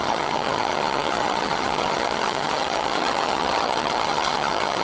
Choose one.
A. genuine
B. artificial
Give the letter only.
B